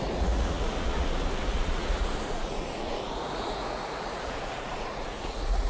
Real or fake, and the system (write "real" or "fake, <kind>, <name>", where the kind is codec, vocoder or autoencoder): fake, vocoder, Vocos